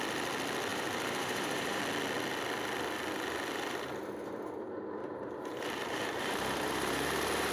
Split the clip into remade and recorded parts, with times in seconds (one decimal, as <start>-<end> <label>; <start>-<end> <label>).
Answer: 0.0-0.7 recorded; 0.7-1.8 remade; 1.8-5.0 recorded; 5.0-7.5 remade